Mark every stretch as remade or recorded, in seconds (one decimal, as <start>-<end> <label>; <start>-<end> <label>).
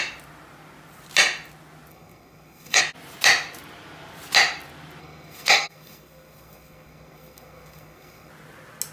0.0-1.9 recorded; 1.9-2.8 remade; 2.8-5.0 recorded; 5.0-8.3 remade; 8.3-8.9 recorded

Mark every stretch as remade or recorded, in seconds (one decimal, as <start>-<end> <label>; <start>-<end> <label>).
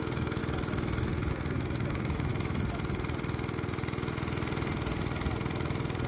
0.0-0.4 remade; 0.4-1.3 recorded; 1.3-2.3 remade; 2.3-6.1 recorded